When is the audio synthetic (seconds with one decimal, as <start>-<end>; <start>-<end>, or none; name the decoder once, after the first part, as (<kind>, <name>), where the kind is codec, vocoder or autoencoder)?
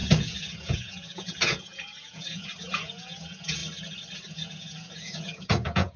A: 0.0-3.6 (vocoder, Vocos); 4.3-6.0